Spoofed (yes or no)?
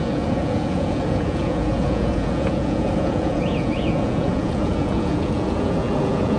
yes